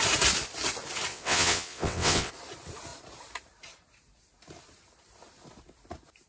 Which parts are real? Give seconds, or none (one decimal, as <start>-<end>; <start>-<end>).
0.0-1.1; 2.3-6.3